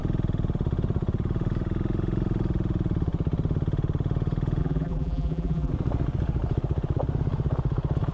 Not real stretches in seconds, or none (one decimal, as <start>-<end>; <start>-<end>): 4.6-5.7